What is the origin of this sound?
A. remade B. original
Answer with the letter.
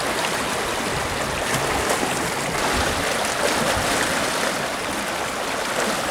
B